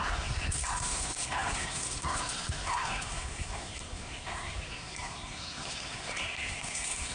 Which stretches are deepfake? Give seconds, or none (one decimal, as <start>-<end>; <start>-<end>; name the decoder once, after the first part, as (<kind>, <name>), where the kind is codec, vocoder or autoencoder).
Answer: 0.0-7.1 (codec, SNAC)